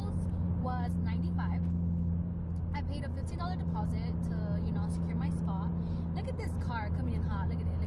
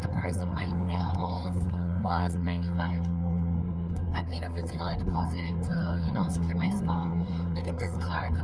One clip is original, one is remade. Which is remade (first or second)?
second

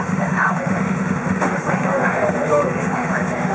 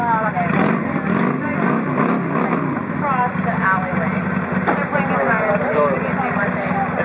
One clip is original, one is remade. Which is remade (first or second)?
first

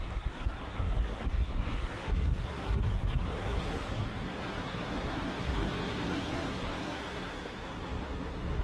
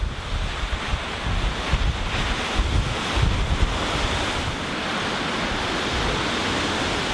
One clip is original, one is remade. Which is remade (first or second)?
first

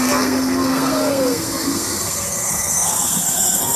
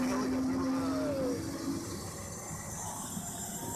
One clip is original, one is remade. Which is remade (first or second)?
first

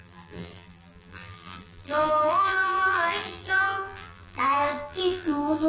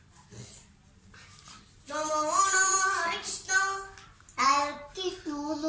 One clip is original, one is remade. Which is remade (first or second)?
first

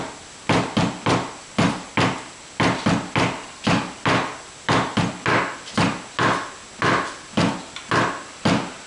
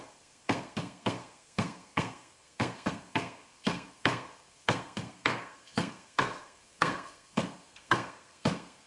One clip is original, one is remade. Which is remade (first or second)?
second